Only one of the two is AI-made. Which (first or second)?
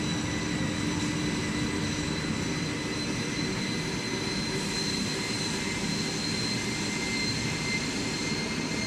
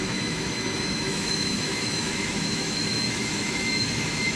second